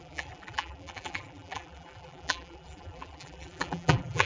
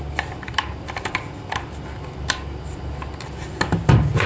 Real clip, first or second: second